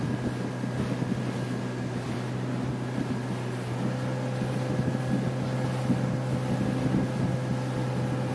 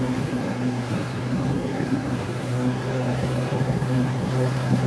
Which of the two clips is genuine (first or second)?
first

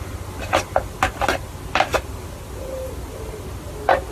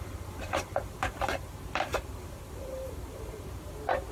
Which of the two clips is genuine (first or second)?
first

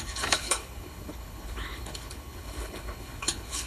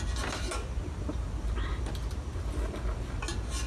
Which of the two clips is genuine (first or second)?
second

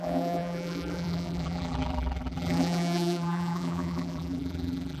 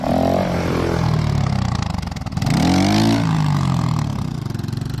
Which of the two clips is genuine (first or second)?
second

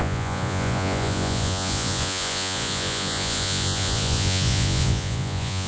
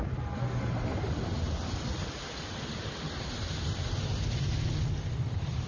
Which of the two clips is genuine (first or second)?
second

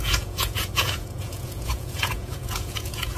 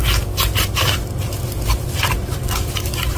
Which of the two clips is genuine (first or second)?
second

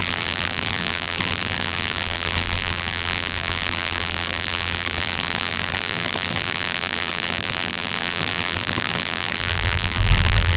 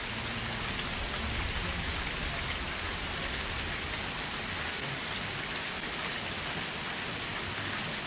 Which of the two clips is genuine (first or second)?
second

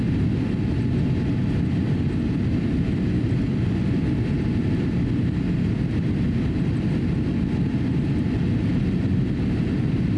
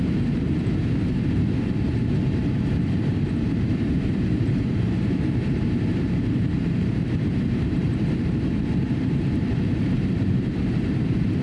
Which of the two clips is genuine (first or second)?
first